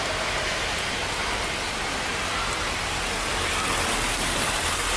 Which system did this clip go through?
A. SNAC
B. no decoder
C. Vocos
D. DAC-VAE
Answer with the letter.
B